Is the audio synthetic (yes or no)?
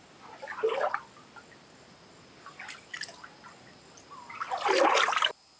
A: no